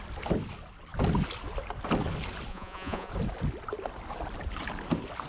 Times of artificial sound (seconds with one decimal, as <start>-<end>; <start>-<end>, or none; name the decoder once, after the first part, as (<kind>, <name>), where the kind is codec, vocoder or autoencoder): 2.5-3.1 (vocoder, Vocos)